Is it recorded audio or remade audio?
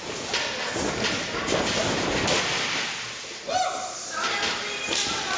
recorded